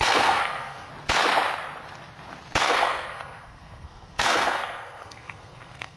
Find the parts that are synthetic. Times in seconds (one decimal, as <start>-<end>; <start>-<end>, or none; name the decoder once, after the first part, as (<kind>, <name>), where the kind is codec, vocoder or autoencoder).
0.0-0.9 (codec, SNAC); 2.6-6.0

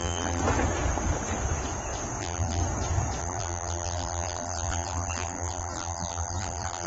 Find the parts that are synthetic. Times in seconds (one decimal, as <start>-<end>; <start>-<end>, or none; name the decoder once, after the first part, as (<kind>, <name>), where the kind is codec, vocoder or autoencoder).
0.0-0.4 (vocoder, BigVGAN v2); 2.2-2.6; 3.2-6.9

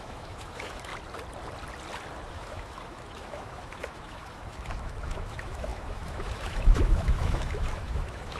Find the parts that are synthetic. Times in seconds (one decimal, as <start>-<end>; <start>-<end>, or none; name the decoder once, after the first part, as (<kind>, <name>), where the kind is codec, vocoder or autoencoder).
0.0-0.9 (autoencoder, DAC-VAE); 2.3-8.4

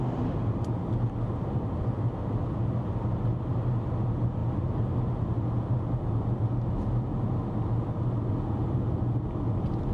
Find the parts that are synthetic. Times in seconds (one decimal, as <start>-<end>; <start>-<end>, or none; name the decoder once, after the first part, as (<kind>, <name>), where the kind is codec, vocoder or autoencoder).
none